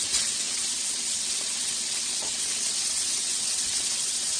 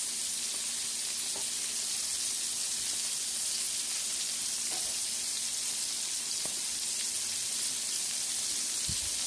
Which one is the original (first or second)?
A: second